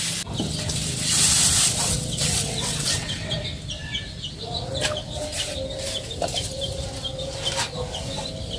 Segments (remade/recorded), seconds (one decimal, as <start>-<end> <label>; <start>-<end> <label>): 0.0-1.9 recorded; 1.9-3.4 remade; 3.4-8.6 recorded